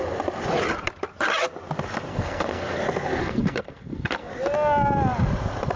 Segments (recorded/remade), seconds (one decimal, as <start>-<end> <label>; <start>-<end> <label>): 0.0-2.1 recorded; 2.1-2.8 remade; 2.8-3.2 recorded; 3.2-4.3 remade; 4.3-5.8 recorded

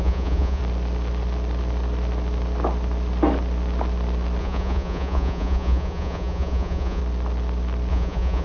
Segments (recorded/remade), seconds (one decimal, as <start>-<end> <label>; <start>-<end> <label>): 0.0-0.6 remade; 0.6-4.4 recorded; 4.4-7.0 remade; 7.0-7.9 recorded; 7.9-8.4 remade

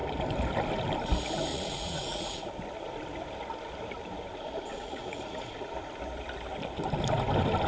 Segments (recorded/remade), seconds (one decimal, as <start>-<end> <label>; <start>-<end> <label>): 0.0-1.5 recorded; 1.5-2.5 remade; 2.5-4.7 recorded; 4.7-5.7 remade; 5.7-7.7 recorded